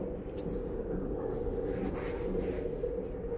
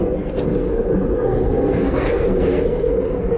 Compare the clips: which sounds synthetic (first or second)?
second